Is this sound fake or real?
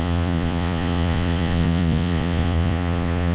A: fake